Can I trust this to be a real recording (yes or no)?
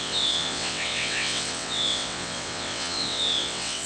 no